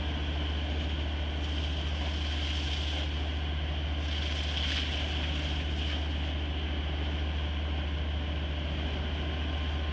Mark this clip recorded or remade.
recorded